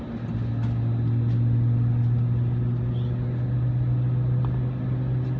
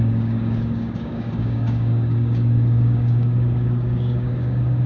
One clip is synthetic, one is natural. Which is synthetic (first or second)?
second